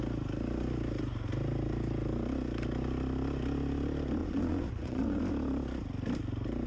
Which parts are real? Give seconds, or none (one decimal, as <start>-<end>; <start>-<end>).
0.0-4.2; 5.2-6.7

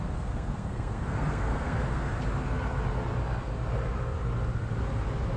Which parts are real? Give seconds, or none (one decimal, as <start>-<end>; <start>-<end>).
2.1-5.4